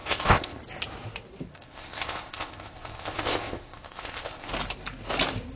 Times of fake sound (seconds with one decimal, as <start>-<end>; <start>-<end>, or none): 0.0-0.6; 1.5-4.5

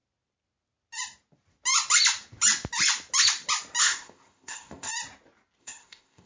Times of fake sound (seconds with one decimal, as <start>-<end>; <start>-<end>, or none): 3.8-4.9; 5.6-6.3

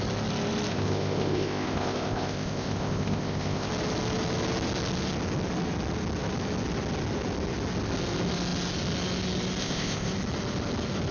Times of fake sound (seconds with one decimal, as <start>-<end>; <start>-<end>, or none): 0.7-3.7; 9.6-10.1